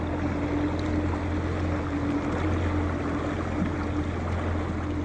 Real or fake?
real